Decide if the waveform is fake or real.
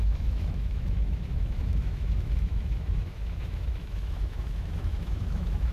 fake